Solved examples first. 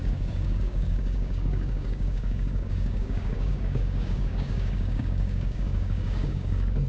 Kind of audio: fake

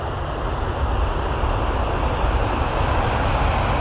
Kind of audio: real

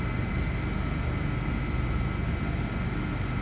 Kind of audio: real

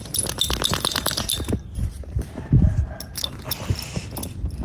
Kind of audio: real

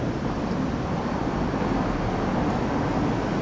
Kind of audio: real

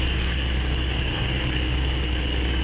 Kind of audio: fake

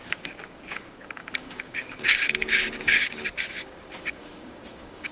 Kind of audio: fake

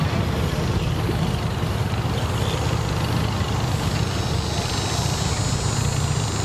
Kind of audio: real